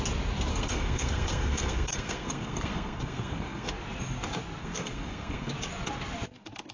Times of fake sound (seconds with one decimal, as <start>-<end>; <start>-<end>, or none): 0.5-3.7; 4.6-5.5

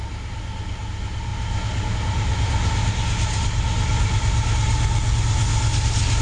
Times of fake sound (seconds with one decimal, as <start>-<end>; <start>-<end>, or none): none

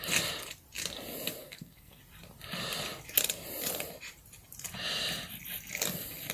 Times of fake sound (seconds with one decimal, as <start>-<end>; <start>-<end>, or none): 1.4-2.0